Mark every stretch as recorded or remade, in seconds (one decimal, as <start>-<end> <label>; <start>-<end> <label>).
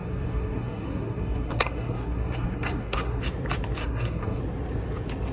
0.0-3.2 remade; 3.2-3.8 recorded; 3.8-4.4 remade; 4.4-5.3 recorded